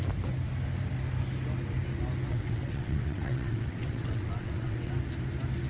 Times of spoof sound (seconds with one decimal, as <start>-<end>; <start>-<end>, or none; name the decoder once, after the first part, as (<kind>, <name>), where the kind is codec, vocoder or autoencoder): 2.3-4.9 (vocoder, WaveNeXt)